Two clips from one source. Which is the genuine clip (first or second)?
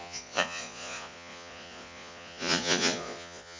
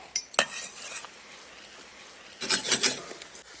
second